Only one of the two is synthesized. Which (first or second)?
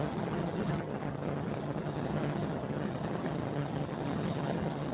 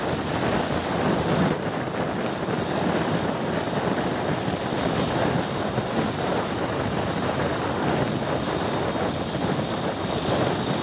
first